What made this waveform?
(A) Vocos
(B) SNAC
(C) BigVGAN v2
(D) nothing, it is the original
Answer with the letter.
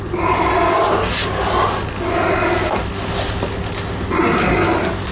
D